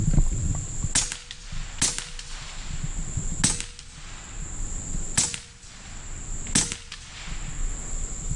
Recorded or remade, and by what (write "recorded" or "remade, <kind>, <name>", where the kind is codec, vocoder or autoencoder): recorded